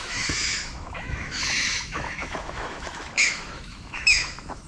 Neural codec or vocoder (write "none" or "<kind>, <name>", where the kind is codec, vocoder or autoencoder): autoencoder, DAC-VAE